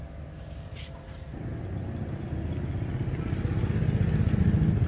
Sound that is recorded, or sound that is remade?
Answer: recorded